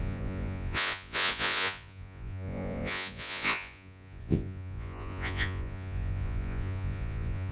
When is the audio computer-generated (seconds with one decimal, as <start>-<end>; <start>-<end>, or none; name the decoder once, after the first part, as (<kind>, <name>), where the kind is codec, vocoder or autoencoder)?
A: 0.0-7.5 (vocoder, Vocos)